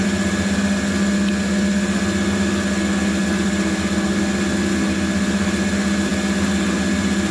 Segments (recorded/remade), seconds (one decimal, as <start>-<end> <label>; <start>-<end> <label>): 0.0-7.3 recorded